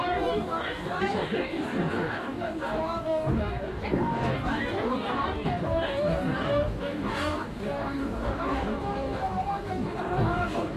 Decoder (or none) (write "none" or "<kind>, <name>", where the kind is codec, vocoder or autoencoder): codec, DAC